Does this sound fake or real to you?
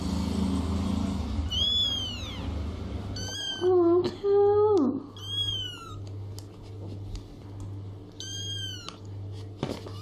real